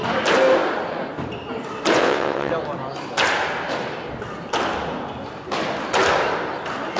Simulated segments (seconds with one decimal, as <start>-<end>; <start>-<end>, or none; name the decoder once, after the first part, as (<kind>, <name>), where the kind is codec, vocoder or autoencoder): 2.0-2.5 (vocoder, WaveNeXt)